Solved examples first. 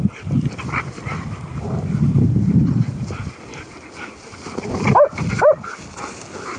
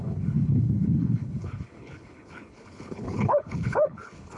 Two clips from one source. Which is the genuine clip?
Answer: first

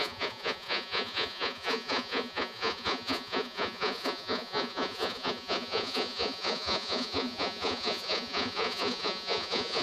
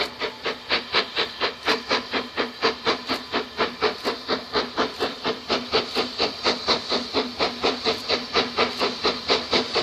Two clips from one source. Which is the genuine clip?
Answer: second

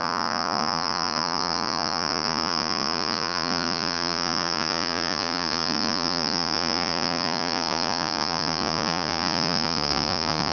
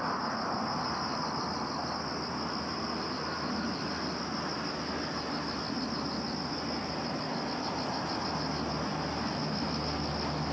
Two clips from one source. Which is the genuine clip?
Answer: second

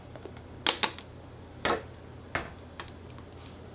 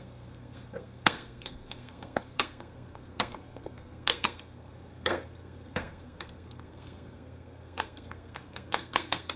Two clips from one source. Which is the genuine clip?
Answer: first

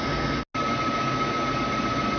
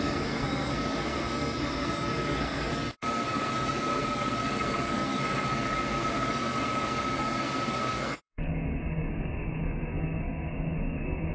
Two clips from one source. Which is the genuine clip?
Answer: first